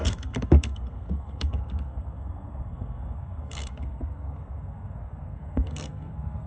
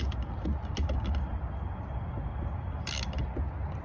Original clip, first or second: second